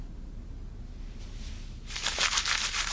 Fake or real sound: real